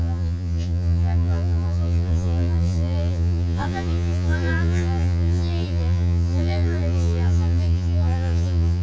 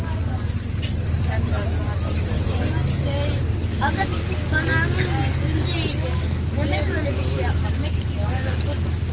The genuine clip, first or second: second